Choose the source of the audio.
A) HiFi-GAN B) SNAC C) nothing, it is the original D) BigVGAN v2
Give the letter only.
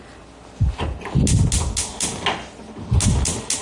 C